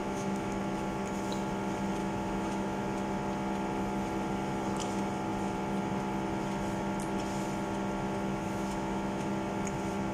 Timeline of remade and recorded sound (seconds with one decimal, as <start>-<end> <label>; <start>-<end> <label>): 0.0-0.6 remade; 0.6-2.0 recorded; 2.0-2.8 remade; 2.8-8.3 recorded; 8.3-9.3 remade; 9.3-10.1 recorded